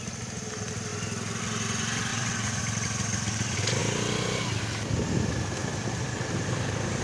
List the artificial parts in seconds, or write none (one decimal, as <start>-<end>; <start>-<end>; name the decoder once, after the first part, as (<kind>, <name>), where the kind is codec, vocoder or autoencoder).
2.1-2.6 (vocoder, WaveNeXt)